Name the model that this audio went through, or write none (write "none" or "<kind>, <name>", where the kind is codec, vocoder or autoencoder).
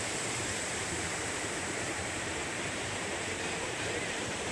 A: vocoder, BigVGAN v2